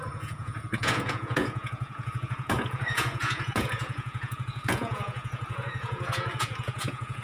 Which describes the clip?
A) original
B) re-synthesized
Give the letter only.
B